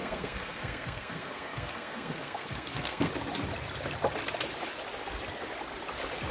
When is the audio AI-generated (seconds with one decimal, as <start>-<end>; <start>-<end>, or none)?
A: 0.0-3.1